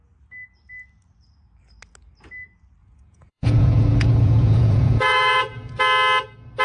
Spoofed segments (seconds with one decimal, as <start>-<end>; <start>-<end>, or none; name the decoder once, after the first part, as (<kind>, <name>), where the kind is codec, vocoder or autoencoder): 2.8-5.8 (vocoder, Vocos)